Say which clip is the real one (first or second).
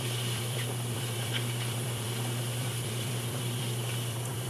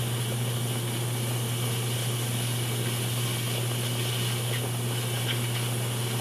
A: second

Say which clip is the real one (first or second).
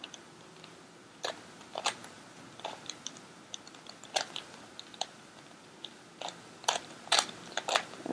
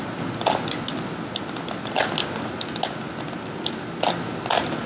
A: second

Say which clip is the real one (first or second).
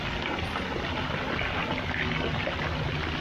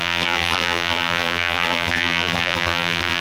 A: first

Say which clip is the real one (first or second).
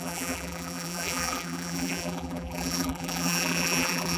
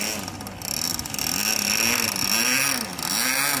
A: second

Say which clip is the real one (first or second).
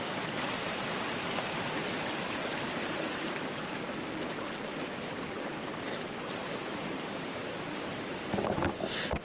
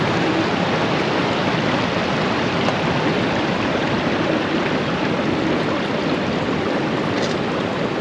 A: first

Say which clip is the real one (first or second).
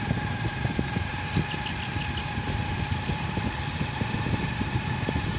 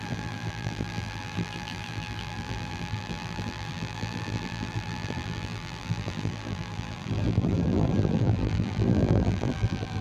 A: first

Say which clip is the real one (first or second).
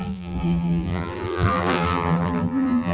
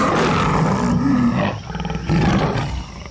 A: second